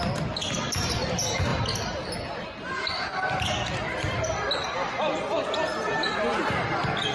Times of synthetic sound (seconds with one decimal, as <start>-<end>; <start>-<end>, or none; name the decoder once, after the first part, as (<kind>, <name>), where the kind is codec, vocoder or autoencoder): none